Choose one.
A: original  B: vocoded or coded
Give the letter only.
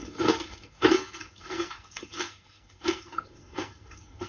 B